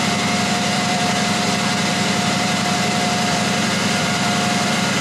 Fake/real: fake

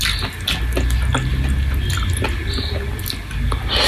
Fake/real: real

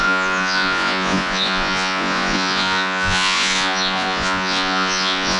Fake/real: fake